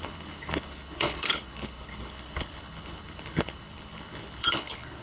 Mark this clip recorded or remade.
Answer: remade